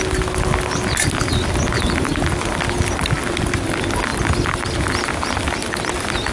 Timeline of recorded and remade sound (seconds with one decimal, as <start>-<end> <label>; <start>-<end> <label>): 0.0-6.3 recorded